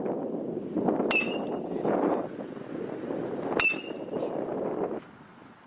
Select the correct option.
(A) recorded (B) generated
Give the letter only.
B